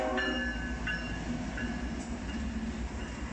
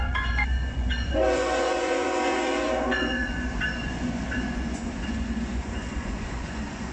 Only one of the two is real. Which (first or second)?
first